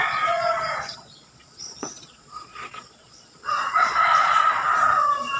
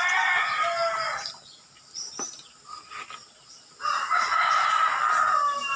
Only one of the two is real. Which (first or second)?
second